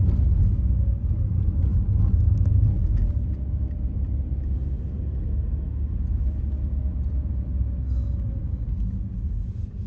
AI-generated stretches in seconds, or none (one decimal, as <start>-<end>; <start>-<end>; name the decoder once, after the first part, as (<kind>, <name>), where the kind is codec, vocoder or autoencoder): none